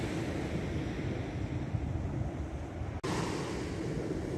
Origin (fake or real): real